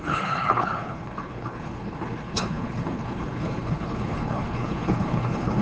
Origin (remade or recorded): remade